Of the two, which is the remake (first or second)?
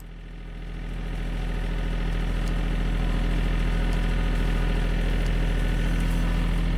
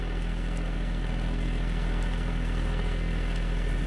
second